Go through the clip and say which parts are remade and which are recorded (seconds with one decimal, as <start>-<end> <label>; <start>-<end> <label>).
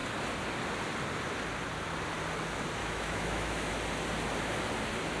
0.0-2.8 recorded; 2.8-3.7 remade; 3.7-5.2 recorded